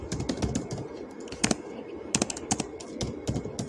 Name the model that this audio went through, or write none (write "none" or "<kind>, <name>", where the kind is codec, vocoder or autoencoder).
none